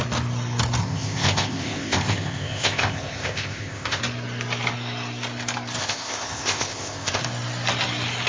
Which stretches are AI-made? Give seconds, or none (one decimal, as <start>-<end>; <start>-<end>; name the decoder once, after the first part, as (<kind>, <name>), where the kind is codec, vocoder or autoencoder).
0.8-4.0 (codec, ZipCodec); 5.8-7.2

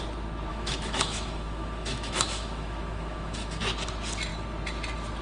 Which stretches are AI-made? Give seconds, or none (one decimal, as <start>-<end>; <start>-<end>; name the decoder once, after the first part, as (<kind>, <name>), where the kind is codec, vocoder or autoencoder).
0.5-3.6 (autoencoder, DAC-VAE)

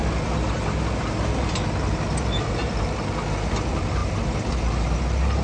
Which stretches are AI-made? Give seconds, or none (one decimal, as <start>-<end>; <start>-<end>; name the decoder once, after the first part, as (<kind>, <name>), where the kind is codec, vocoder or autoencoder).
none

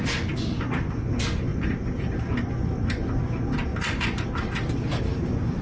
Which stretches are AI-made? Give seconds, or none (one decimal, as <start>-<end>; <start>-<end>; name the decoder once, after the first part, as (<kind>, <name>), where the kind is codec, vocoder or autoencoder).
3.7-5.6 (vocoder, BigVGAN v2)